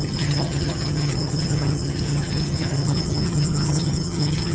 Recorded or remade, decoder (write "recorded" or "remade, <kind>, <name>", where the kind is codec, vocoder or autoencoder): remade, vocoder, HiFi-GAN